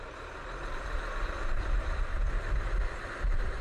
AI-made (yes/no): yes